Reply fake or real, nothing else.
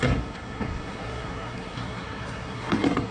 fake